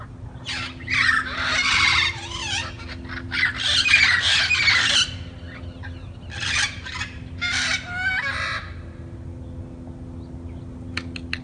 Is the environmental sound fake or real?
real